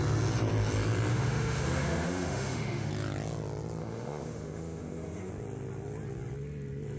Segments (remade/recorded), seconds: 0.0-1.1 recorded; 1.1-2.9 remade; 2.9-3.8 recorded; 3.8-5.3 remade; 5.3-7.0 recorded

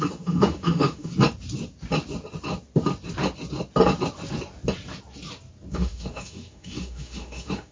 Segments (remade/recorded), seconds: 0.0-1.1 remade; 1.1-5.7 recorded; 5.7-7.7 remade

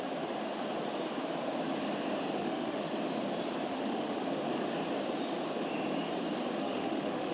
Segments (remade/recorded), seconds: 0.0-2.4 recorded; 2.4-2.9 remade; 2.9-3.7 recorded; 3.7-4.2 remade; 4.2-6.6 recorded; 6.6-7.3 remade

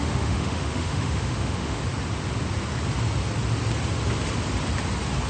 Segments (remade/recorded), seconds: 0.0-1.8 remade; 1.8-5.3 recorded

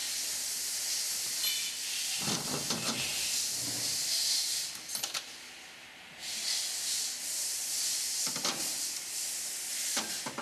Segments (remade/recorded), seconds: 0.0-10.4 recorded

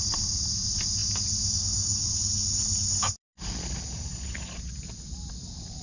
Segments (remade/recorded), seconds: 0.0-5.8 recorded